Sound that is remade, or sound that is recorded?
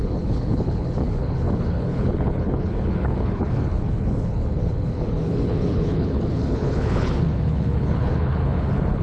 remade